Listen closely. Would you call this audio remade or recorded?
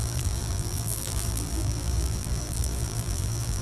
remade